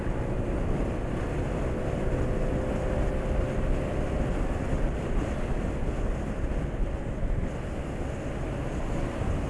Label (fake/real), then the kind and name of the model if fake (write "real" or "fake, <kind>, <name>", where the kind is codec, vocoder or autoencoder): real